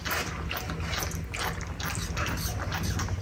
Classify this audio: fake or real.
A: real